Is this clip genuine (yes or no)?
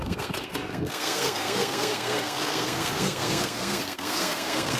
no